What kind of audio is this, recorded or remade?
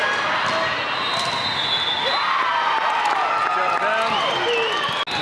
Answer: recorded